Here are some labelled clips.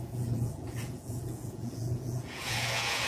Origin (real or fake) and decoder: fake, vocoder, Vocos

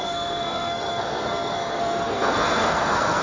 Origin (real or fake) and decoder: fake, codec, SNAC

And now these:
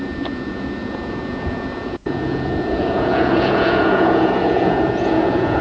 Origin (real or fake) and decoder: fake, vocoder, Vocos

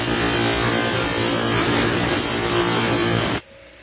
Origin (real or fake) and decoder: real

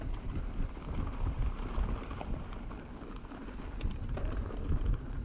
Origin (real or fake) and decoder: fake, vocoder, BigVGAN v2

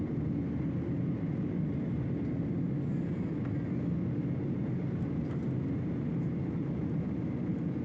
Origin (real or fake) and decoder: real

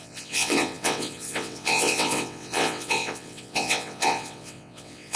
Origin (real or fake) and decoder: fake, vocoder, WaveNeXt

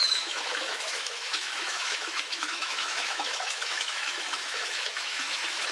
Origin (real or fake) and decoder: fake, autoencoder, DAC-VAE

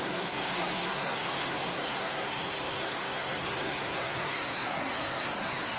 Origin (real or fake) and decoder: fake, codec, SNAC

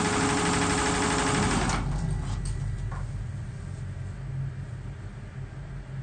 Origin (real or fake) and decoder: real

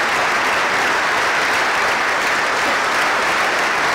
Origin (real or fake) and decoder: real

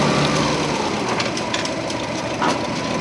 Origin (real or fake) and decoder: real